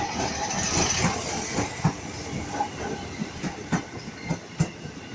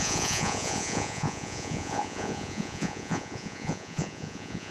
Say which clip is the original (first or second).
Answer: first